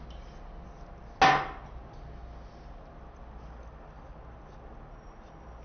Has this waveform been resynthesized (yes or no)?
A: no